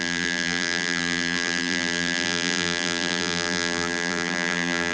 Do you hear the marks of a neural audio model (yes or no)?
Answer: yes